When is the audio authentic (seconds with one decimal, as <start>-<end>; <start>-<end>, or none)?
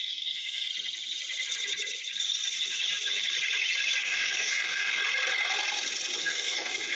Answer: 0.7-4.0; 5.0-6.2